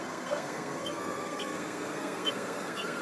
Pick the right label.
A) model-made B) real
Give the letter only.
A